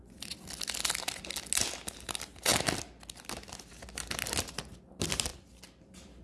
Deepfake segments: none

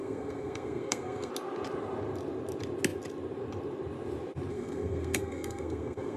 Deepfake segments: 0.0-1.3; 4.5-6.2